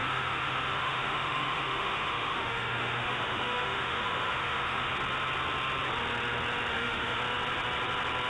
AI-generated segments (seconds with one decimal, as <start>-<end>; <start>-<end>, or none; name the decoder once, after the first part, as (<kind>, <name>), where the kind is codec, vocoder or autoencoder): 0.0-4.9 (autoencoder, DAC-VAE); 6.7-7.2